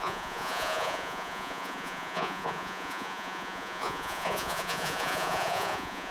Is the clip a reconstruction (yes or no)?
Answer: yes